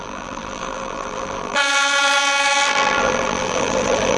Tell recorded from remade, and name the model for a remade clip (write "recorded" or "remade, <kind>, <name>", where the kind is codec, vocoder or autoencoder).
remade, vocoder, BigVGAN v2